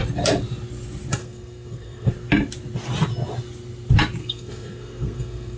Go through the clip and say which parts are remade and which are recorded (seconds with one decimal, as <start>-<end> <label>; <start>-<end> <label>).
0.0-1.2 recorded; 1.2-2.1 remade; 2.1-4.2 recorded; 4.2-5.6 remade